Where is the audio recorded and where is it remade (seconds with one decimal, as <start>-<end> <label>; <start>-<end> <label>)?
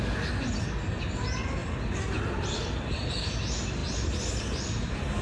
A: 0.0-5.2 recorded